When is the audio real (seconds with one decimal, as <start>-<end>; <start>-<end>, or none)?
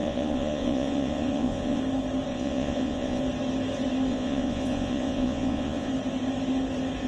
1.8-2.3; 3.2-4.1; 5.9-7.1